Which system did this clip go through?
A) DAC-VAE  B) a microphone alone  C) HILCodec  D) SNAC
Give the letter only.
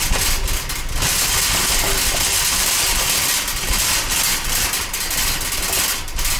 B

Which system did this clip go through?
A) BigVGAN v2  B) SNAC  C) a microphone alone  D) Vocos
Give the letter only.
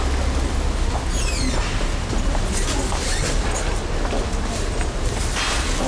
C